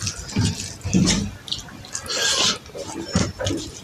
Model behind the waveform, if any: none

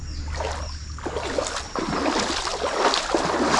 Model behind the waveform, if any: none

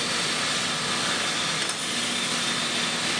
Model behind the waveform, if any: none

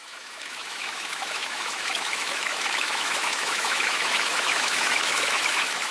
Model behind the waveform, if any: autoencoder, DAC-VAE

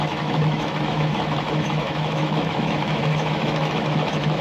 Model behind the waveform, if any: autoencoder, DAC-VAE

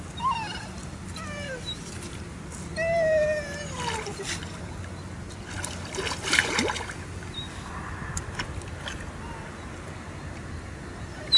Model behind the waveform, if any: none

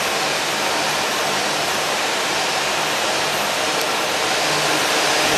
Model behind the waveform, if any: none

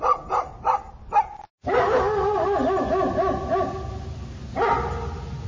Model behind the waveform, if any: none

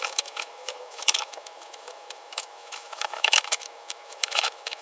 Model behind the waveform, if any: autoencoder, DAC-VAE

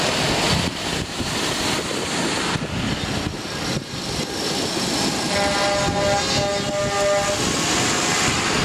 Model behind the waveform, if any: none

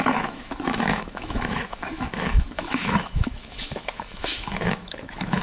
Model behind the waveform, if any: autoencoder, DAC-VAE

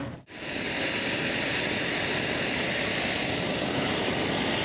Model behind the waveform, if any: none